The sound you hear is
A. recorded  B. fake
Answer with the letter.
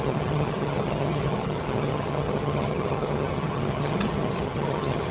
B